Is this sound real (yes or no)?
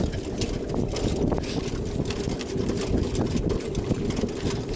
yes